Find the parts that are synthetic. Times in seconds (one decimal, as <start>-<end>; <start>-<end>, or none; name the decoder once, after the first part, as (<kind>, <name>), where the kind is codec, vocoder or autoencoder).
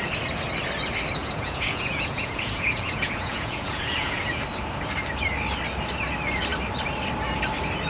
1.2-4.4 (vocoder, Vocos)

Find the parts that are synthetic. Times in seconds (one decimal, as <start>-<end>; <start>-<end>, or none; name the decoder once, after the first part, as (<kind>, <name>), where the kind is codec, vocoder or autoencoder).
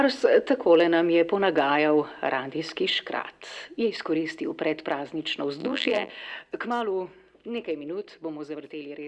5.6-6.1 (vocoder, BigVGAN v2)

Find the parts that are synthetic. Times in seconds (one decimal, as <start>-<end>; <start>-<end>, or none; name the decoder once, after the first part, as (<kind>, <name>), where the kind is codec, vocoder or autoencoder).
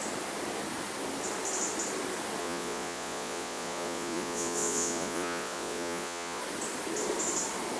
2.4-6.4 (vocoder, Vocos)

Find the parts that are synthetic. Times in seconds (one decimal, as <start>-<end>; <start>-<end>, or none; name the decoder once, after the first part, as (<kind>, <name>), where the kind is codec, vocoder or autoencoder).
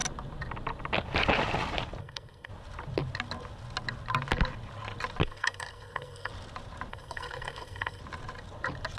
2.0-2.5 (codec, SNAC); 5.2-6.3; 6.9-8.0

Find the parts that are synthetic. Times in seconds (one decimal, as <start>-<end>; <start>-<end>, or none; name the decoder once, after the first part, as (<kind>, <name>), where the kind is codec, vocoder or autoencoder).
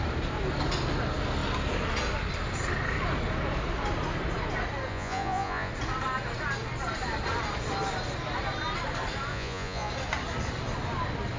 4.9-5.7 (vocoder, Vocos); 9.3-9.9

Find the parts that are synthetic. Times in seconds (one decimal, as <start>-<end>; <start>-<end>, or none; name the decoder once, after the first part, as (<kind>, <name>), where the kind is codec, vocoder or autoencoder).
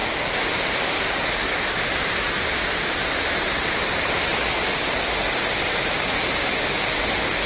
0.5-4.3 (vocoder, BigVGAN v2); 5.4-7.5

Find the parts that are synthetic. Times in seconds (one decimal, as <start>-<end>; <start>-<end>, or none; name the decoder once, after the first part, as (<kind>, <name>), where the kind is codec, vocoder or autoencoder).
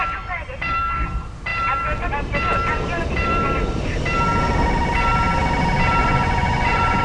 6.0-7.0 (vocoder, Vocos)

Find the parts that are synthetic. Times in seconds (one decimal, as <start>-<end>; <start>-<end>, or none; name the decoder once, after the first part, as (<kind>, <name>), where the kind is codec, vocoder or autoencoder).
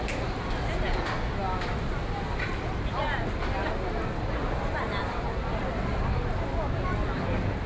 5.0-6.4 (vocoder, BigVGAN v2)